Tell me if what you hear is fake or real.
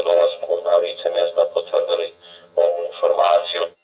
fake